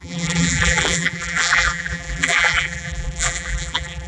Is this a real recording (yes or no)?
no